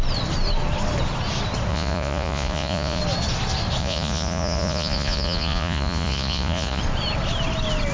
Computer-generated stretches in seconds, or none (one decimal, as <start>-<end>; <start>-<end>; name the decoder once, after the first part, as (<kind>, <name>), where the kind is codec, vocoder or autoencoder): 1.7-3.0 (vocoder, Vocos); 3.8-6.8